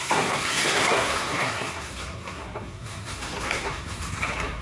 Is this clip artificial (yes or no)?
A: yes